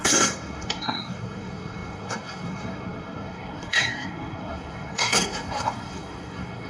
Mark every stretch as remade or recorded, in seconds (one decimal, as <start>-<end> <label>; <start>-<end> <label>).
0.0-6.7 remade